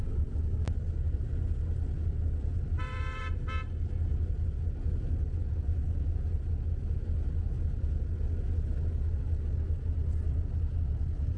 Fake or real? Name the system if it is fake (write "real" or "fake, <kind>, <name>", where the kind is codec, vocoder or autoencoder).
real